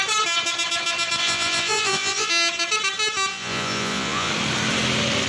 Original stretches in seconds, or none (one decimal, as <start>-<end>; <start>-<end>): 0.0-1.2; 2.3-3.3; 4.3-5.3